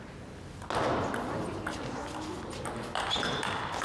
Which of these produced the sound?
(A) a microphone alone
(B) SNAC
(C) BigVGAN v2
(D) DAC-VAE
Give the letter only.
A